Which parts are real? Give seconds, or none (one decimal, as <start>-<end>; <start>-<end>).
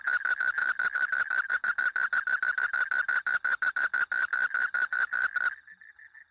0.0-6.3